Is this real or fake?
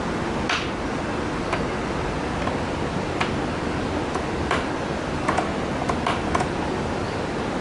real